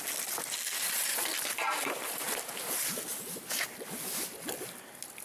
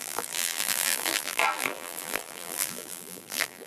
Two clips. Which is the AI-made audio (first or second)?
second